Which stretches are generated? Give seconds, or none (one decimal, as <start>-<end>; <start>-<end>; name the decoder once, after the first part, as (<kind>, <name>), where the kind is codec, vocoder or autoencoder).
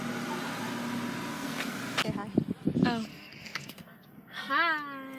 1.3-1.8 (codec, SNAC); 3.1-4.5